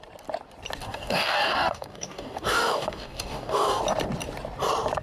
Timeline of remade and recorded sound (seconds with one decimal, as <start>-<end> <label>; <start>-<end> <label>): 0.0-0.8 recorded; 0.8-3.8 remade; 3.8-5.0 recorded